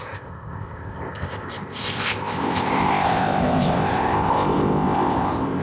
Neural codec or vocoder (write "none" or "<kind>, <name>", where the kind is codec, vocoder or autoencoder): codec, ZipCodec